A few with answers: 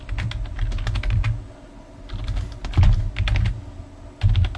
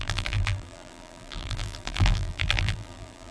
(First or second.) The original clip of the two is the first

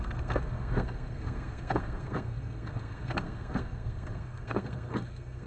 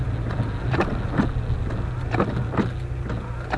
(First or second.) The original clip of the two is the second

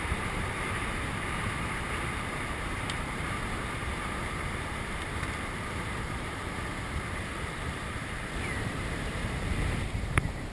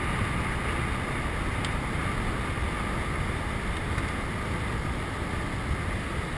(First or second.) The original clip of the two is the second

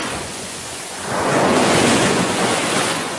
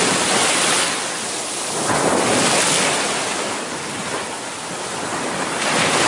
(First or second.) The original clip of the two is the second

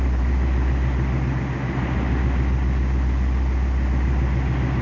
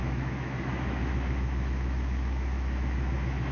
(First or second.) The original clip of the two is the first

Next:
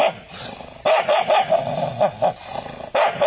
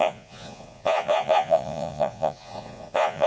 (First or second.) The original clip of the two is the first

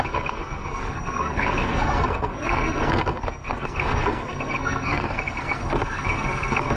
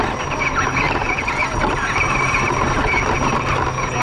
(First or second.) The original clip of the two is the second